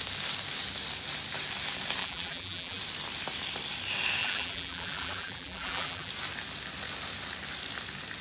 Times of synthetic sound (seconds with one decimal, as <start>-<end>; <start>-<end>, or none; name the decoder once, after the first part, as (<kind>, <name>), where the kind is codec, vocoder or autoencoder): 2.0-2.8 (vocoder, BigVGAN v2); 4.2-6.1